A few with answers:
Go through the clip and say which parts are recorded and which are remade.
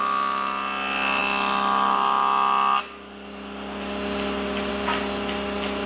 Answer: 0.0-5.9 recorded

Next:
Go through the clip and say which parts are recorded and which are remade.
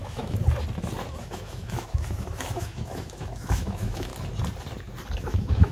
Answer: 0.0-0.4 remade; 0.4-1.2 recorded; 1.2-4.1 remade; 4.1-5.2 recorded; 5.2-5.7 remade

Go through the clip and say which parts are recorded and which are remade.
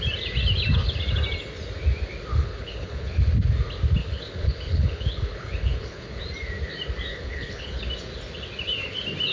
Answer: 0.0-2.3 recorded; 2.3-3.3 remade; 3.3-4.0 recorded; 4.0-6.2 remade; 6.2-7.1 recorded; 7.1-7.8 remade; 7.8-9.3 recorded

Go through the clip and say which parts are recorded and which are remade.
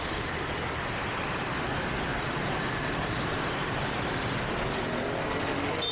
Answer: 0.0-2.1 recorded; 2.1-3.9 remade; 3.9-5.9 recorded